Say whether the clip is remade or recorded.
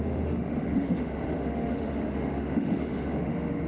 remade